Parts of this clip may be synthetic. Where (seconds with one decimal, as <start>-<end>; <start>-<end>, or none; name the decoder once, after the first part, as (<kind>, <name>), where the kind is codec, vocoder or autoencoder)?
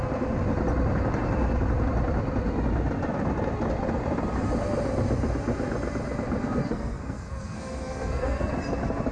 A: 6.6-8.5 (codec, SNAC)